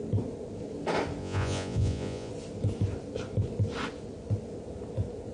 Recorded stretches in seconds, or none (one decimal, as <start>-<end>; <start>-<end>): 0.0-1.2; 2.3-5.3

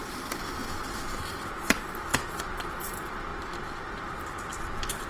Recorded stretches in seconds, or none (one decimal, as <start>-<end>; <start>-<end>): 0.0-5.1